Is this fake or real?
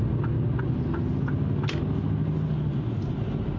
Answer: real